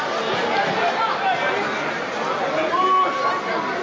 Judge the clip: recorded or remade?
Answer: recorded